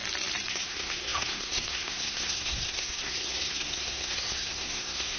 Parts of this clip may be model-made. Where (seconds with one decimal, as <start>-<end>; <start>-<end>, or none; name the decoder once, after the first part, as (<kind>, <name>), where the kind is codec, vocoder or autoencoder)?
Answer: 0.5-5.2 (codec, SNAC)

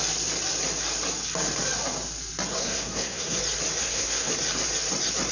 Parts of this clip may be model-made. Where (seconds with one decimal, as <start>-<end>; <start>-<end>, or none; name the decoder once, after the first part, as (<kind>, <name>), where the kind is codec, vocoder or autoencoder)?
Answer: 2.6-3.4 (codec, SNAC); 3.8-4.3